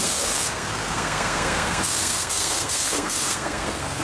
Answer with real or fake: fake